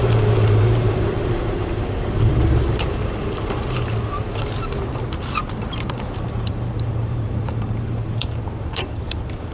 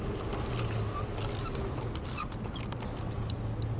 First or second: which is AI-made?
first